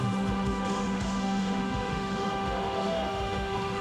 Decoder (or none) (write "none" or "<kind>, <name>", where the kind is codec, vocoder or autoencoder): autoencoder, DAC-VAE